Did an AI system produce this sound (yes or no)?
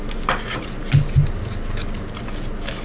no